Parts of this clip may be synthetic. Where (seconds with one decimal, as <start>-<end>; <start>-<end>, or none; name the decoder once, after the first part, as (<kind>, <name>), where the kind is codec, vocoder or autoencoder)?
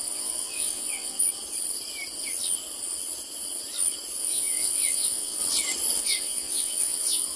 0.0-1.2 (vocoder, WaveNeXt); 4.2-5.4; 6.0-7.4